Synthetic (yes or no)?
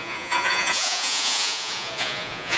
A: yes